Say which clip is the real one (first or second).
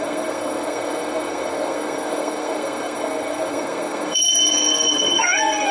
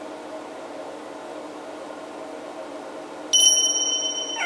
second